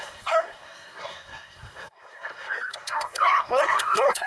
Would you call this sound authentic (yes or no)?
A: no